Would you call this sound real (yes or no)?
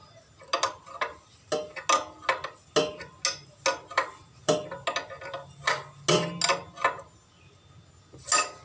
yes